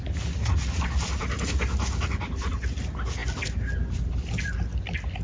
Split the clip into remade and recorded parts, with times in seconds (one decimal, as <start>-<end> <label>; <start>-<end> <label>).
0.0-5.2 recorded

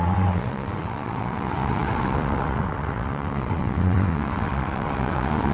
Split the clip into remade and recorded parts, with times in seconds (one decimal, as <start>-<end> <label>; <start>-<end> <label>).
0.0-5.5 remade

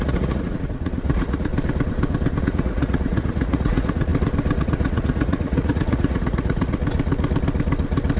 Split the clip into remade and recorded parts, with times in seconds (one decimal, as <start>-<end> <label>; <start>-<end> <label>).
0.0-1.5 remade; 1.5-2.4 recorded; 2.4-4.1 remade; 4.1-4.6 recorded; 4.6-6.8 remade; 6.8-8.2 recorded

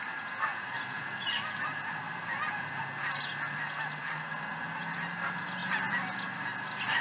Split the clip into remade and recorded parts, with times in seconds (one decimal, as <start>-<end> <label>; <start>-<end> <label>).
0.0-0.5 recorded; 0.5-2.8 remade; 2.8-5.6 recorded; 5.6-7.0 remade

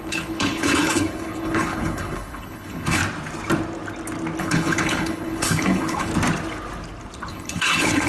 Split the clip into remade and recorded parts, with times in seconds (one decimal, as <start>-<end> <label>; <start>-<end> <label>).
0.0-3.0 remade; 3.0-4.4 recorded; 4.4-6.1 remade; 6.1-7.3 recorded; 7.3-8.1 remade

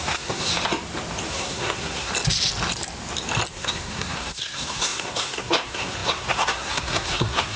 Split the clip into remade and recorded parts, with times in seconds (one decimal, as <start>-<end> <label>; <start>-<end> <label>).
0.0-0.5 remade; 0.5-1.3 recorded; 1.3-2.1 remade; 2.1-3.5 recorded; 3.5-7.6 remade

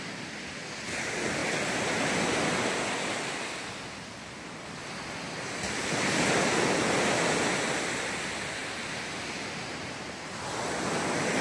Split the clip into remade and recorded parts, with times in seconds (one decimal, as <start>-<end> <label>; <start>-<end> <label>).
0.0-11.4 recorded